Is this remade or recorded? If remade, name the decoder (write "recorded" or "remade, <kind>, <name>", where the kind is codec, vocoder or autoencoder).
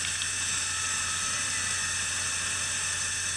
remade, vocoder, BigVGAN v2